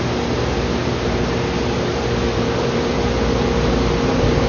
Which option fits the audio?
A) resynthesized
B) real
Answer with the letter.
B